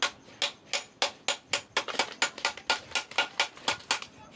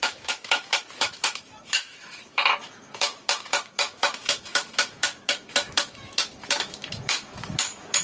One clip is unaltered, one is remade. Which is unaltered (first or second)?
first